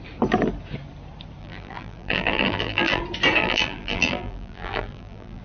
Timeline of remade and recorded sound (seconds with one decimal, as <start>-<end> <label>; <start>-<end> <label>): 0.0-1.4 recorded; 1.4-3.0 remade; 3.0-3.4 recorded; 3.4-5.4 remade